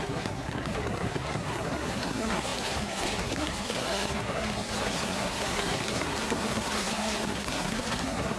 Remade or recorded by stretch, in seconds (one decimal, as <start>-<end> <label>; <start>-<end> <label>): 0.0-8.4 remade